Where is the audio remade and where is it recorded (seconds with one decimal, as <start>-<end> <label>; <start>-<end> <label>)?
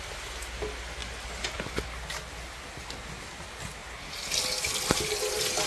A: 0.0-5.7 recorded